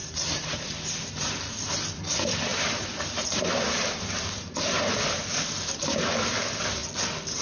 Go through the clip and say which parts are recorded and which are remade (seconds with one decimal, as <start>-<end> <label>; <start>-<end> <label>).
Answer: 0.0-1.6 remade; 1.6-2.5 recorded; 2.5-4.8 remade; 4.8-7.4 recorded